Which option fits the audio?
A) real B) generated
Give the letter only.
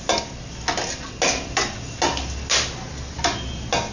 A